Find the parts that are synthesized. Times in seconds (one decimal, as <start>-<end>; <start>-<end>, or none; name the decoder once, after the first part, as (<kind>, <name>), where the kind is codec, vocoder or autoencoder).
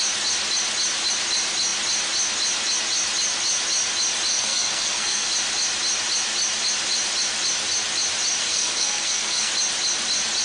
4.3-5.3 (codec, SNAC); 8.4-9.5